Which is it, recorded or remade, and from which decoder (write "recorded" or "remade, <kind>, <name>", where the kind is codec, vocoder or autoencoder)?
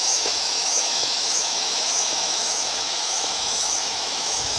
remade, autoencoder, DAC-VAE